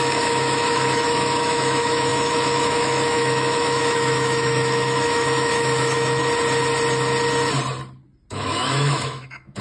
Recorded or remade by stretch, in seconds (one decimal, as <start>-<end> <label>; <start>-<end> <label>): 0.0-6.2 remade; 6.2-8.3 recorded; 8.3-9.6 remade